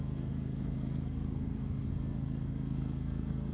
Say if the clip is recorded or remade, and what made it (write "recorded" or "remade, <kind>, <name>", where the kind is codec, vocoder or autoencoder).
remade, codec, SNAC